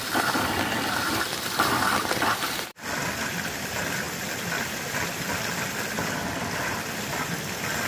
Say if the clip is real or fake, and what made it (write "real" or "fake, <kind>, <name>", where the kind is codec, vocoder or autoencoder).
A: real